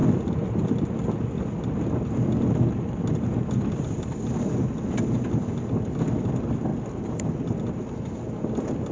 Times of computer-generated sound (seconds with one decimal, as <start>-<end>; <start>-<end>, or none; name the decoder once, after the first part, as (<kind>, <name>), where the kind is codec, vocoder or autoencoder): 0.0-0.7 (vocoder, BigVGAN v2); 6.7-7.7